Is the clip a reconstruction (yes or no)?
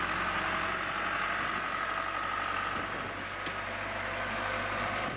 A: no